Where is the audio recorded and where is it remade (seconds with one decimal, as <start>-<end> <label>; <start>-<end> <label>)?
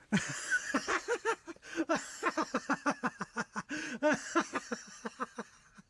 0.0-5.9 recorded